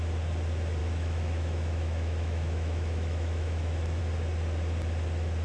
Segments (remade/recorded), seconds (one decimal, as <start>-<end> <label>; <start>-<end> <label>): 0.0-0.8 recorded; 0.8-4.0 remade; 4.0-5.4 recorded